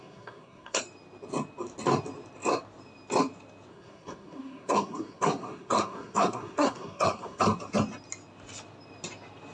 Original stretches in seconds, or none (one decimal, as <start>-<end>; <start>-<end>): 0.8-3.7; 7.4-9.5